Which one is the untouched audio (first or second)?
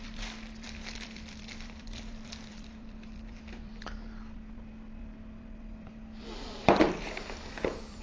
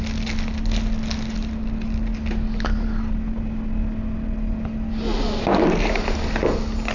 second